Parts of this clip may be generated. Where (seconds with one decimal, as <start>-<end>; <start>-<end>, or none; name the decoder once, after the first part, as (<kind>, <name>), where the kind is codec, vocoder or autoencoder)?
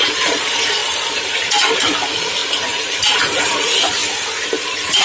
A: 0.0-0.8 (vocoder, BigVGAN v2); 1.8-2.4; 3.5-4.0; 4.6-5.0